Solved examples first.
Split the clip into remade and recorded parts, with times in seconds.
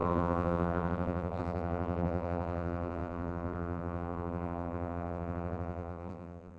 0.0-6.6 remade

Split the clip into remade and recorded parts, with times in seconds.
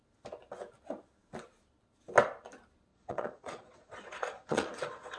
0.0-2.9 recorded; 2.9-5.2 remade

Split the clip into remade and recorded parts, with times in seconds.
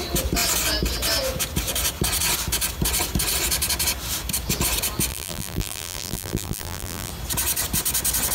0.0-5.1 recorded; 5.1-7.1 remade; 7.1-8.3 recorded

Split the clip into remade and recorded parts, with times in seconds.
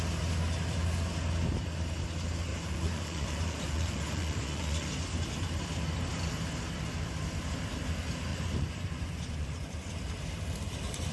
0.0-2.5 recorded; 2.5-4.9 remade; 4.9-8.3 recorded; 8.3-9.9 remade; 9.9-11.1 recorded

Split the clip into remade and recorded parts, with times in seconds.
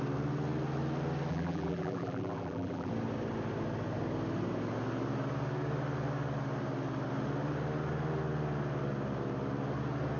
0.0-1.3 recorded; 1.3-2.9 remade; 2.9-10.2 recorded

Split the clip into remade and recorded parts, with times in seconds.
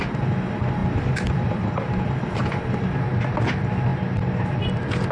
0.0-0.8 recorded; 0.8-3.0 remade; 3.0-5.1 recorded